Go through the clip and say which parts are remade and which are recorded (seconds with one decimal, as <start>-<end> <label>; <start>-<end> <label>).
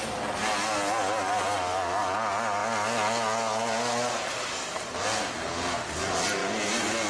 0.0-7.1 recorded